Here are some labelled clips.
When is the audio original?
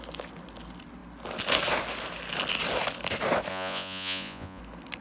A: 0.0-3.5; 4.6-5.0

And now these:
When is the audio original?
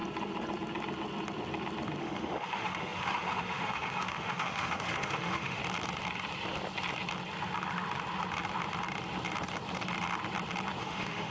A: 0.0-2.0; 5.6-10.8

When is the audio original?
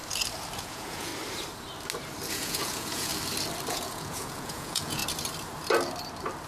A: 0.0-0.6; 1.1-2.3; 3.1-3.7; 5.0-6.5